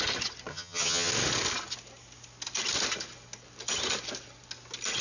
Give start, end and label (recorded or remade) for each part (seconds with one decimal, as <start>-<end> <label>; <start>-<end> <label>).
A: 0.0-0.5 recorded; 0.5-1.1 remade; 1.1-5.0 recorded